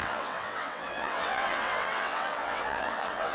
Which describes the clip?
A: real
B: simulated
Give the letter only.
B